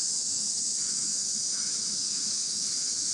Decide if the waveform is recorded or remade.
remade